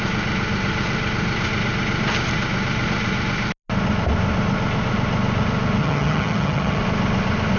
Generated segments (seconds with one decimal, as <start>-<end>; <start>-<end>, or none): 5.8-6.8